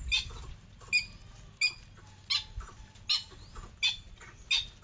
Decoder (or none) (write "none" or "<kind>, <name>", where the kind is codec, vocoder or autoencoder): none